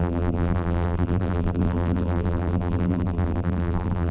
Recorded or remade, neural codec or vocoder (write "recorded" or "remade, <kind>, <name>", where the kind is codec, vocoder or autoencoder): remade, vocoder, BigVGAN v2